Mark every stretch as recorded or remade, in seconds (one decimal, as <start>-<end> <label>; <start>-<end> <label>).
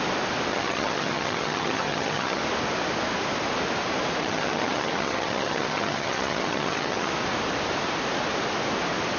0.0-0.5 recorded; 0.5-2.4 remade; 2.4-4.2 recorded; 4.2-7.1 remade; 7.1-9.2 recorded